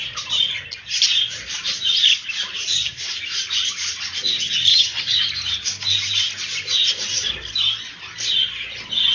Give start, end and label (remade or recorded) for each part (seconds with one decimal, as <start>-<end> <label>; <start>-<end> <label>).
0.0-4.7 recorded; 4.7-5.2 remade; 5.2-9.1 recorded